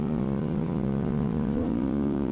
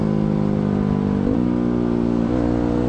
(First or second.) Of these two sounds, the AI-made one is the first